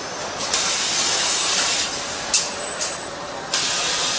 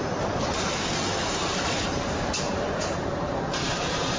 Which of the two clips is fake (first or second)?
second